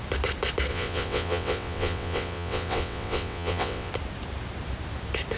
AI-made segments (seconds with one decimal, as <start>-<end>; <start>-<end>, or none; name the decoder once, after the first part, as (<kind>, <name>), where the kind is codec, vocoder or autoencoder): 0.7-3.9 (vocoder, WaveNeXt)